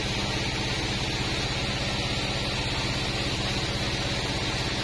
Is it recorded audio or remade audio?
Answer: recorded